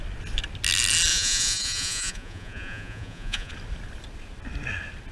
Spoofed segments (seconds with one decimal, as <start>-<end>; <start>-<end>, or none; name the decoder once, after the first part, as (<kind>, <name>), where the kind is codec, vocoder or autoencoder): 1.1-3.5 (vocoder, Vocos)